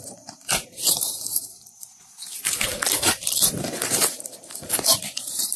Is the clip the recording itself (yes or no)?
no